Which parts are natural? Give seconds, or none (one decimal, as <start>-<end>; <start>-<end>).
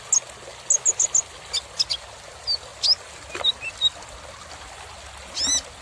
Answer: 0.0-5.8